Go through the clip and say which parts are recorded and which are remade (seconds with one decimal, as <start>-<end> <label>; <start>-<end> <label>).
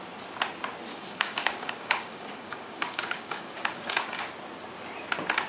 0.0-0.9 recorded; 0.9-4.2 remade; 4.2-5.5 recorded